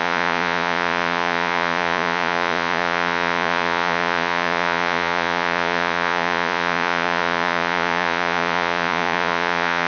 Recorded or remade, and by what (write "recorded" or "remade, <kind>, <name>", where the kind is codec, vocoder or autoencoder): remade, vocoder, Vocos